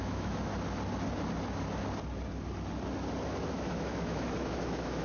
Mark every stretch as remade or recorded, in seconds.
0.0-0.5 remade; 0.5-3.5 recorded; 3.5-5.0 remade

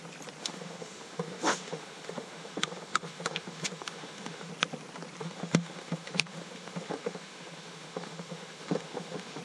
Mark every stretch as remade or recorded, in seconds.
0.0-0.4 recorded; 0.4-4.5 remade; 4.5-5.2 recorded; 5.2-9.4 remade

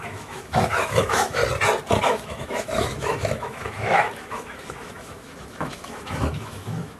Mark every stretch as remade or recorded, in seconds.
0.0-1.4 remade; 1.4-2.0 recorded; 2.0-7.0 remade

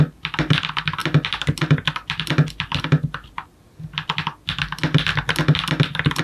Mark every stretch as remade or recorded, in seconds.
0.0-6.2 recorded

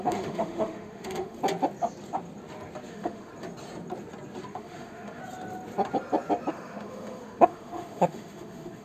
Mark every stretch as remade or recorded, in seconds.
0.0-1.4 remade; 1.4-2.9 recorded; 2.9-3.3 remade; 3.3-4.5 recorded; 4.5-5.2 remade; 5.2-6.5 recorded; 6.5-8.8 remade

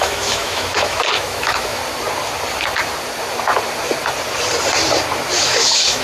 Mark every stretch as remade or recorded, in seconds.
0.0-1.8 remade; 1.8-5.4 recorded; 5.4-6.0 remade

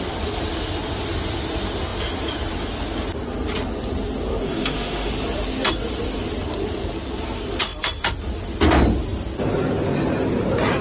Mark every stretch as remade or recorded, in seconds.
0.0-4.4 recorded; 4.4-5.1 remade; 5.1-10.8 recorded

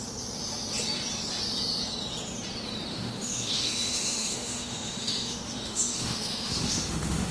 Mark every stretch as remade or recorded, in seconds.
0.0-2.9 recorded; 2.9-7.3 remade